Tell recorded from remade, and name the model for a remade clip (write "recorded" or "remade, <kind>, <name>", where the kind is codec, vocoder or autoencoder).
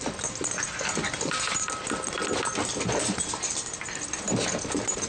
recorded